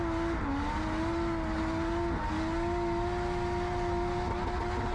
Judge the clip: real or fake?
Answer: real